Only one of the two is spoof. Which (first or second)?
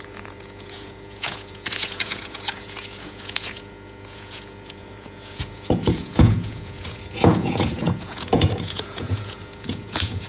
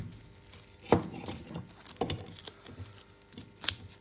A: first